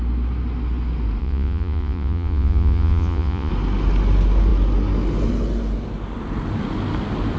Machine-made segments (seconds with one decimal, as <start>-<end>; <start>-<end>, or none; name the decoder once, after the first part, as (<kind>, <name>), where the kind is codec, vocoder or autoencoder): 1.2-3.5 (vocoder, Vocos)